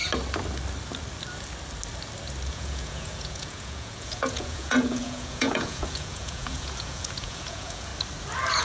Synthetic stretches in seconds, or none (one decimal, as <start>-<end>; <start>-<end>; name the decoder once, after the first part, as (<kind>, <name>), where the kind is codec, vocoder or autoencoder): 2.5-7.9 (vocoder, Vocos)